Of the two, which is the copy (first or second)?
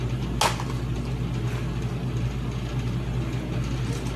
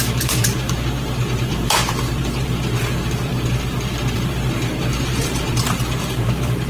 second